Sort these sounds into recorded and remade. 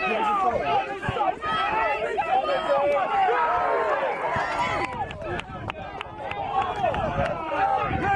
recorded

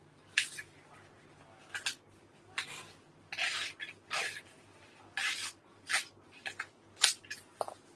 recorded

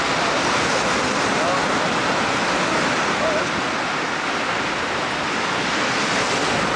recorded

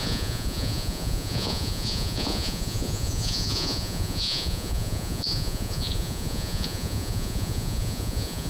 remade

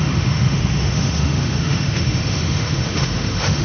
remade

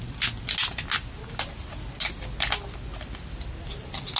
recorded